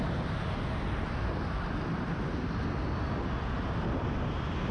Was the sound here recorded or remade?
recorded